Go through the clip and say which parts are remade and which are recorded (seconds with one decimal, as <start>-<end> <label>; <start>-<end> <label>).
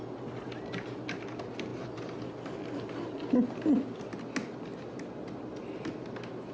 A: 0.0-6.5 recorded